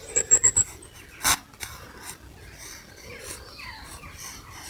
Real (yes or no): yes